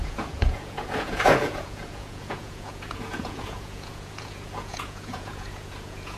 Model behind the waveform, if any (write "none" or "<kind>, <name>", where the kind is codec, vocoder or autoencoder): vocoder, Vocos